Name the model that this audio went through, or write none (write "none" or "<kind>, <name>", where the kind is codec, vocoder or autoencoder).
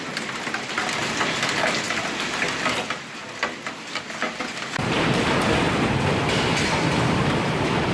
none